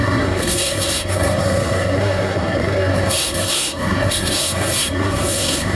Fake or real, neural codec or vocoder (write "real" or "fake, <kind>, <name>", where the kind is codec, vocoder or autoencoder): fake, codec, SNAC